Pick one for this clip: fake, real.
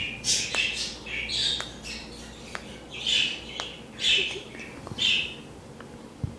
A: real